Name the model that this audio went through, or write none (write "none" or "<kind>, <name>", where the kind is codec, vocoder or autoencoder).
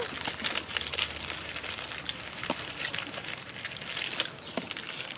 none